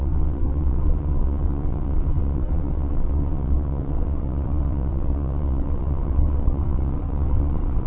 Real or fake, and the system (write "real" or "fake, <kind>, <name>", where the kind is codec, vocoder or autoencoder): fake, vocoder, WaveNeXt